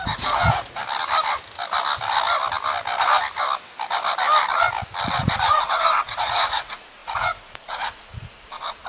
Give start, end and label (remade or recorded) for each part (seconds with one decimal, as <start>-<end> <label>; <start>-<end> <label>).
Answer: 0.0-0.8 remade; 0.8-5.2 recorded; 5.2-8.9 remade